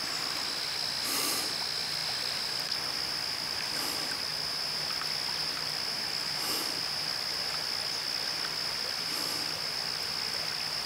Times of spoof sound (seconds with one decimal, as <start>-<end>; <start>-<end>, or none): none